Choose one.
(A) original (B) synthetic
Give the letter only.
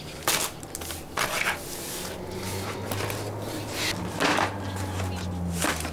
A